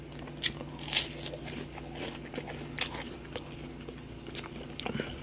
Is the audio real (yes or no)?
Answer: yes